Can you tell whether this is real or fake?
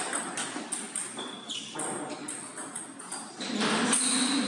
real